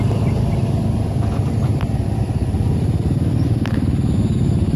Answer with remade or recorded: recorded